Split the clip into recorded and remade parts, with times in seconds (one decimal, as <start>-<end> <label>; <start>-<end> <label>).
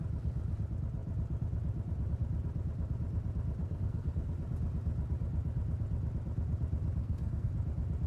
0.0-3.6 recorded; 3.6-4.3 remade; 4.3-7.0 recorded; 7.0-7.5 remade; 7.5-8.1 recorded